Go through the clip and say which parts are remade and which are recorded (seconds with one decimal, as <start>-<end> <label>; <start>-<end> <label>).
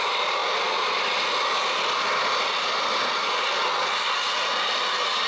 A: 0.0-5.3 recorded